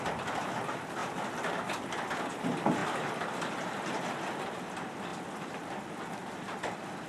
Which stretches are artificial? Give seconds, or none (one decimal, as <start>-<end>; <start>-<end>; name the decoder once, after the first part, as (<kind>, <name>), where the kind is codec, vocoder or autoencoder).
1.0-2.1 (vocoder, BigVGAN v2); 5.1-5.8